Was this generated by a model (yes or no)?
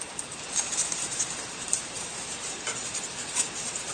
yes